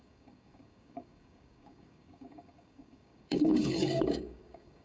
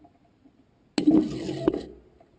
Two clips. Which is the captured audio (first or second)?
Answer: second